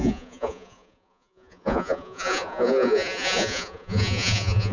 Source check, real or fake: fake